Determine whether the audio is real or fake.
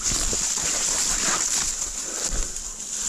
fake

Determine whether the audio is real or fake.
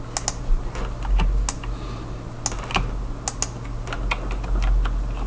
real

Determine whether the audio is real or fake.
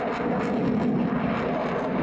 real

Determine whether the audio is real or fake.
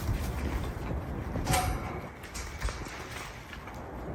fake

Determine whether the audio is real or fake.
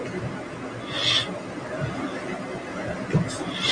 real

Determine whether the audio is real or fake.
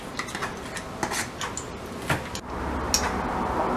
real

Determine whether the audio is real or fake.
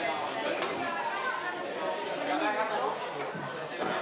real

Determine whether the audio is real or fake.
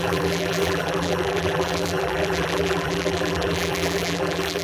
fake